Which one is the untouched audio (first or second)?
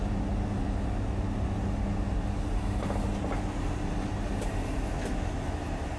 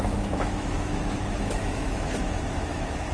first